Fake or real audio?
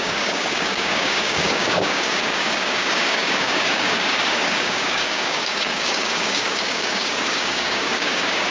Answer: fake